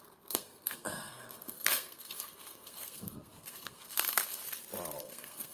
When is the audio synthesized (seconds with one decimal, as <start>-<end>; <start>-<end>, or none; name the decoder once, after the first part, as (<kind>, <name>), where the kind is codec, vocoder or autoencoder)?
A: 0.0-4.4 (codec, SNAC); 5.0-5.5